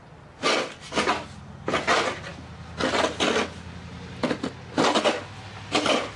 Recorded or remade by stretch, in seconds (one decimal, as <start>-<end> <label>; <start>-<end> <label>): 0.0-6.2 recorded